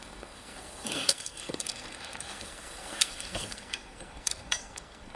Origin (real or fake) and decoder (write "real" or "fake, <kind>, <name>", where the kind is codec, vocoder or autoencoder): fake, codec, SNAC